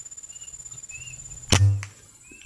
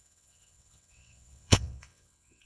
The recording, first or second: first